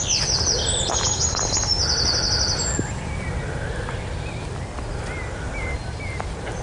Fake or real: real